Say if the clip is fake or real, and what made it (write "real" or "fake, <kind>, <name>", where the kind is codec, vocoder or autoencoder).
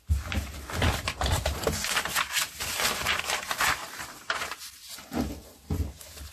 real